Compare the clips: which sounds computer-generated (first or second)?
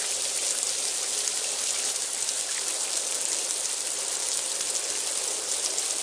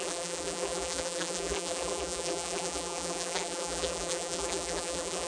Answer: second